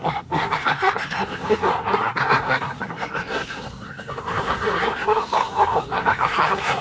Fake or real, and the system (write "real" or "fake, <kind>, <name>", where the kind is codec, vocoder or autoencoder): fake, codec, SNAC